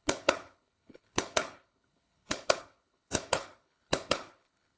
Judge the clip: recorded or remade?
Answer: remade